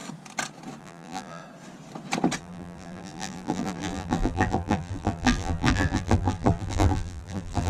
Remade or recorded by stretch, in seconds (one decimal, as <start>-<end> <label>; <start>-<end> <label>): 0.0-0.8 recorded; 0.8-1.4 remade; 1.4-2.4 recorded; 2.4-7.7 remade